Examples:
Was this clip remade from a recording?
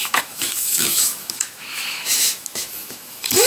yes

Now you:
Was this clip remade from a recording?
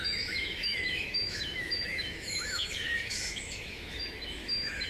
yes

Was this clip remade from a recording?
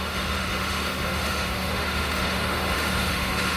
yes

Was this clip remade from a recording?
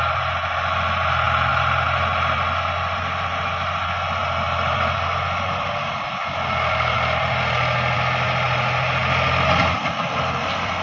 no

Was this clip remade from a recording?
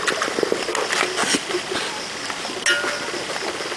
no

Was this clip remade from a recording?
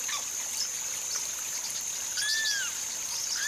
no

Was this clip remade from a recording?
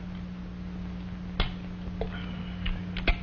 no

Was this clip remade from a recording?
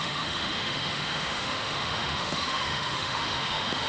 yes